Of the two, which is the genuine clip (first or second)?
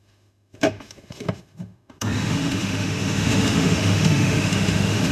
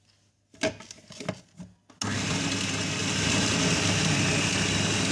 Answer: second